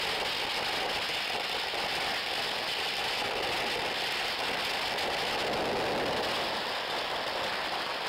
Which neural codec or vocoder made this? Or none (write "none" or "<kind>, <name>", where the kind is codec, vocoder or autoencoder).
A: none